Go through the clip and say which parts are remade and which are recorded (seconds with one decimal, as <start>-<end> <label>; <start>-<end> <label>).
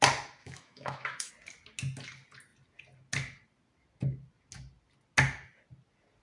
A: 0.0-0.4 recorded; 0.4-1.3 remade; 1.3-6.2 recorded